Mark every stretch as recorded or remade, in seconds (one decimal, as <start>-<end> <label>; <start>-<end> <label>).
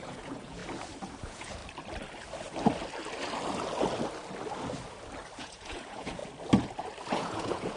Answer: 0.0-0.6 remade; 0.6-1.2 recorded; 1.2-1.6 remade; 1.6-5.4 recorded; 5.4-6.2 remade; 6.2-7.1 recorded; 7.1-7.8 remade